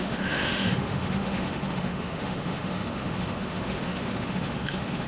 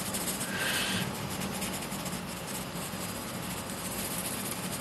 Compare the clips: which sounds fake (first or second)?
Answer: first